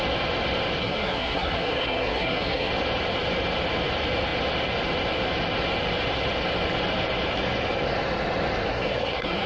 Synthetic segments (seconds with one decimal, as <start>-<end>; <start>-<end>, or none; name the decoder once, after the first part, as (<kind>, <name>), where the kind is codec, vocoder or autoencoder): 0.8-2.7 (codec, SNAC); 8.7-9.5